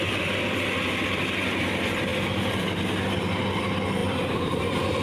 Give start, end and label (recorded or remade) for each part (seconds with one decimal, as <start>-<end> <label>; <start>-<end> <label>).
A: 0.0-4.0 recorded; 4.0-4.6 remade; 4.6-5.0 recorded